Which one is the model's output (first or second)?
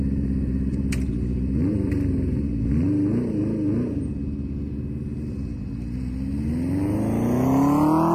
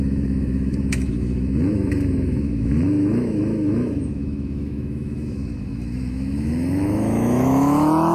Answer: second